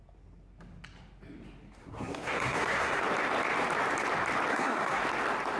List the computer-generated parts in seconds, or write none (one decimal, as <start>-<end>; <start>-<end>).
1.8-3.0; 4.5-5.0